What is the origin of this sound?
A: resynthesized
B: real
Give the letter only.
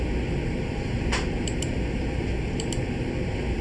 B